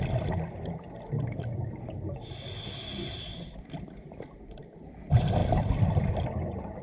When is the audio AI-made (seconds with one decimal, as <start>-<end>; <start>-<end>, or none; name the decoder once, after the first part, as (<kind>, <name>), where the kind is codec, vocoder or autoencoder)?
1.6-2.2 (vocoder, BigVGAN v2); 2.9-3.7; 5.4-6.8